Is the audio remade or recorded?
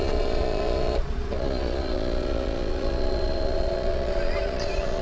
remade